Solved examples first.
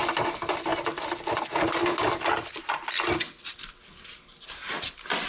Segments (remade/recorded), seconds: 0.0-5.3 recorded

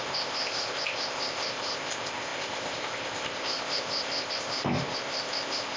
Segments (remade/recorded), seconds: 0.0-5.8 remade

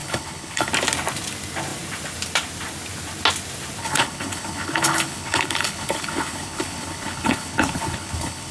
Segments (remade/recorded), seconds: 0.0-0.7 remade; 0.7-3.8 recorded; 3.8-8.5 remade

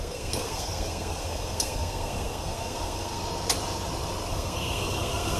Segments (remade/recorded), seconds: 0.0-3.2 remade; 3.2-4.3 recorded; 4.3-5.4 remade